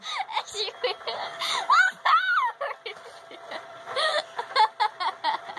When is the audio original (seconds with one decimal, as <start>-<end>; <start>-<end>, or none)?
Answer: 0.0-1.2; 1.7-5.6